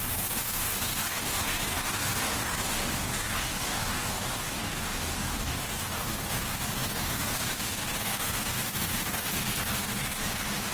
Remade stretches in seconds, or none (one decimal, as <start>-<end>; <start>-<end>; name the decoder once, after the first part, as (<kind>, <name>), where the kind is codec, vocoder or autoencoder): 0.0-10.7 (codec, DAC)